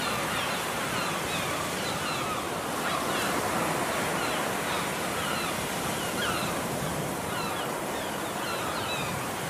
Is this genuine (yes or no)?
yes